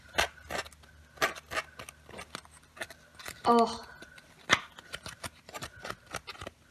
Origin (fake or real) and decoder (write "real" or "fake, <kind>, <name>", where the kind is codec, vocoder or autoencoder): real